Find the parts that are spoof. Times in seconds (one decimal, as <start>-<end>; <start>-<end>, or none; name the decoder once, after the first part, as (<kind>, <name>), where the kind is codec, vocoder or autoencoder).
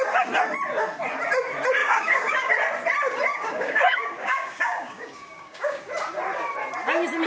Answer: 1.8-2.5 (codec, DAC); 3.3-5.8